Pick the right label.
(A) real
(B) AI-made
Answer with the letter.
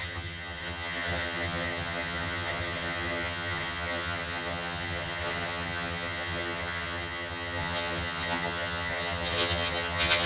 B